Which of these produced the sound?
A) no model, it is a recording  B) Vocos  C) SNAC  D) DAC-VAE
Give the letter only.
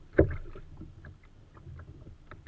A